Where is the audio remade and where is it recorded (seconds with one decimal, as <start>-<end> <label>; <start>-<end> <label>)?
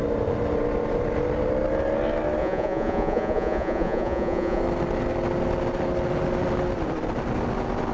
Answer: 0.0-2.4 recorded; 2.4-4.6 remade; 4.6-7.9 recorded